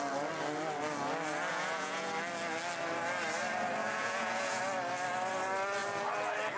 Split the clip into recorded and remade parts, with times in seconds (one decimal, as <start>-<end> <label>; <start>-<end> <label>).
0.0-1.5 recorded; 1.5-2.1 remade; 2.1-3.8 recorded; 3.8-4.6 remade; 4.6-6.6 recorded